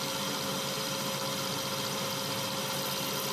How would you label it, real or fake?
real